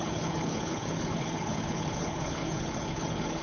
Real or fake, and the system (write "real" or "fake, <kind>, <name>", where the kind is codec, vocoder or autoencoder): fake, codec, HILCodec